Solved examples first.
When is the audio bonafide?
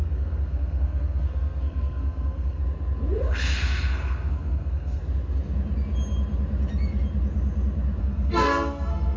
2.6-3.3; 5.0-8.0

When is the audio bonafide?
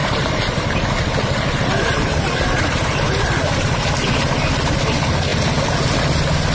3.9-6.5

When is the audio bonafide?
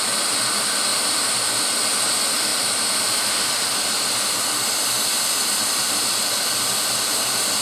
0.0-0.9; 1.6-2.5; 6.3-7.6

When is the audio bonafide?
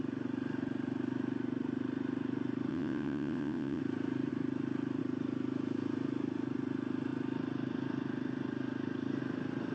0.0-2.7; 3.8-9.7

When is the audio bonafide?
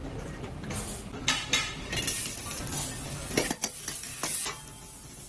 2.6-5.3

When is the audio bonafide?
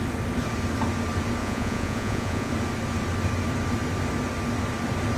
0.0-1.4; 2.5-5.2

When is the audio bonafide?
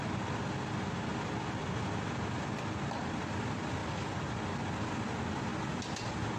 0.0-1.1; 2.5-3.8; 4.4-6.4